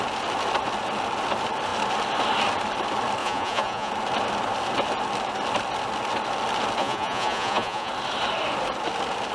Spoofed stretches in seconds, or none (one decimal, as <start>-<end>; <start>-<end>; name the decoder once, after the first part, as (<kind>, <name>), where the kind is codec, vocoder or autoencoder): 3.2-3.9 (vocoder, Vocos); 6.8-7.9